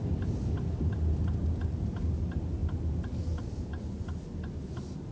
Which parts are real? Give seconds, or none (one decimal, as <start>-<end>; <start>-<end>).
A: 0.0-5.1